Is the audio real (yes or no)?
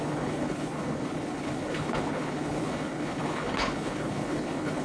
no